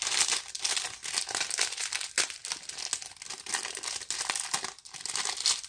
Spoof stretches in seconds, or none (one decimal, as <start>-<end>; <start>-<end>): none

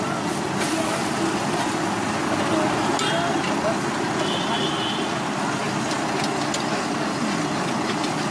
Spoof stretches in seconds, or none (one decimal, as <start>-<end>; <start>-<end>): none

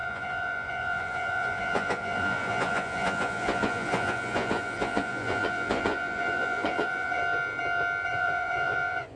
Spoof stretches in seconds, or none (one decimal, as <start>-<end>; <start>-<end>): 0.0-7.2; 8.1-9.2